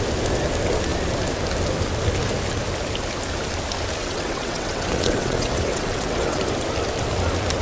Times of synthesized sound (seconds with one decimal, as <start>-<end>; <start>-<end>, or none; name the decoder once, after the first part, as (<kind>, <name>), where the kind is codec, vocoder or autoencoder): 4.0-6.4 (vocoder, WaveNeXt)